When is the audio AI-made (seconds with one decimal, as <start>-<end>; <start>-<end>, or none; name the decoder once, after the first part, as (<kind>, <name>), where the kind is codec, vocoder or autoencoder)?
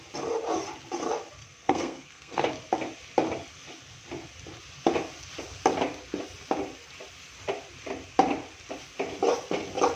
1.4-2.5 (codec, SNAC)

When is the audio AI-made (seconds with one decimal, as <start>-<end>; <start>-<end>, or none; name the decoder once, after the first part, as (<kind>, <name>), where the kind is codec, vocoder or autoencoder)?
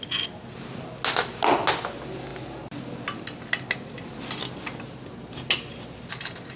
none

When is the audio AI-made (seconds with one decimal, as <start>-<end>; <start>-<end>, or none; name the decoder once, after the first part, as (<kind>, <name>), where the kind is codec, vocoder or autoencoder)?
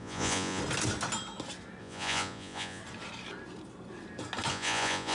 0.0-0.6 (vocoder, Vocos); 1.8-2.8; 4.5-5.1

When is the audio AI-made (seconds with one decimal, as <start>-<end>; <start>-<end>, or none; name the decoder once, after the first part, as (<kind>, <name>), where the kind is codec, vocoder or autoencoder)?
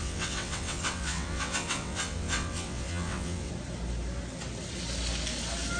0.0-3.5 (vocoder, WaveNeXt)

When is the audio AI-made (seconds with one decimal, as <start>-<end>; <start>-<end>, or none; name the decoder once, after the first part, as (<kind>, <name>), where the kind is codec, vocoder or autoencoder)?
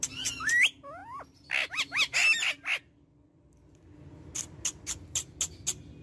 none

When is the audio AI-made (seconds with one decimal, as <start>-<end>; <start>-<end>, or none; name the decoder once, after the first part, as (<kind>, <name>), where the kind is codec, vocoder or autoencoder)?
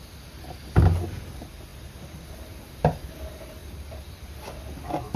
1.7-3.0 (vocoder, BigVGAN v2); 3.6-4.6